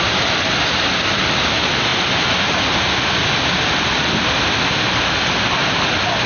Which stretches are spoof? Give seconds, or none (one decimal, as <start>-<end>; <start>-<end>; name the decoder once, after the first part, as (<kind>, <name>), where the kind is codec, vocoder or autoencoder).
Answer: none

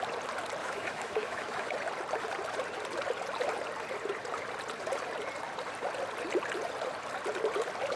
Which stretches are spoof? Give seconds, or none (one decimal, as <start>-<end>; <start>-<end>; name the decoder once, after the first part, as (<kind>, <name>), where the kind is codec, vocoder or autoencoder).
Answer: 0.6-1.7 (autoencoder, DAC-VAE)

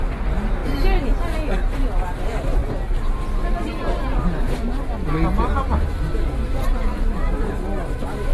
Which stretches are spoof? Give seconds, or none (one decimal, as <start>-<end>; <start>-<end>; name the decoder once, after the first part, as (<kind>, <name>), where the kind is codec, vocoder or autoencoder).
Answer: none

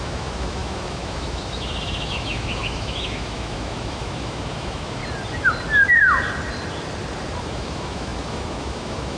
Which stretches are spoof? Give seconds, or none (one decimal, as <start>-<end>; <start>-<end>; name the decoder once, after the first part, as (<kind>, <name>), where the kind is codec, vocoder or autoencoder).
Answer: 0.0-5.0 (autoencoder, DAC-VAE); 7.4-9.2

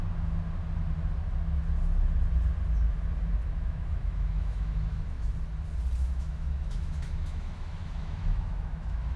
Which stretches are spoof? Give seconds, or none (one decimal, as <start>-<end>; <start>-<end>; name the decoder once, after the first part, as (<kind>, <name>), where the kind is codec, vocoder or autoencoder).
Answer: 3.4-5.3 (autoencoder, DAC-VAE); 6.0-9.2